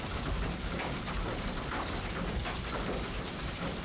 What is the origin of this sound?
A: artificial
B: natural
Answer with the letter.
B